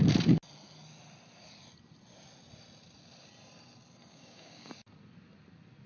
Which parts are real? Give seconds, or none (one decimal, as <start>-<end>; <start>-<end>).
0.0-4.1; 4.7-5.9